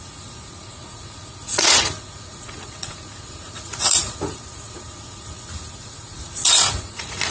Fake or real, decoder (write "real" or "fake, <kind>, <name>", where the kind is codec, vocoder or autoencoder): fake, vocoder, Vocos